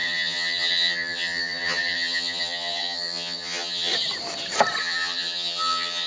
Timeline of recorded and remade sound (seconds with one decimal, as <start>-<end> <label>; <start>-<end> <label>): 0.0-3.9 remade; 3.9-4.8 recorded; 4.8-6.1 remade

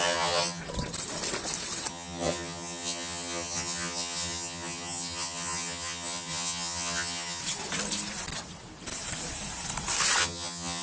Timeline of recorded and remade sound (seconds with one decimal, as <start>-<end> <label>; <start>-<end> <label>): 0.0-0.6 remade; 0.6-1.9 recorded; 1.9-7.4 remade; 7.4-10.2 recorded; 10.2-10.8 remade

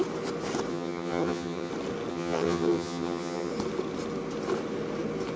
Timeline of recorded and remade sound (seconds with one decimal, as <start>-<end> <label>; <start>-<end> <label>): 0.0-0.7 recorded; 0.7-1.7 remade; 1.7-2.1 recorded; 2.1-3.5 remade; 3.5-5.4 recorded